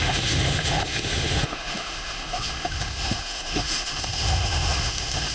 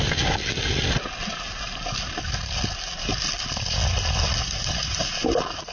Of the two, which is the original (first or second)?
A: second